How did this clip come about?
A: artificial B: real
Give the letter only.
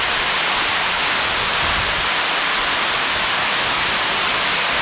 B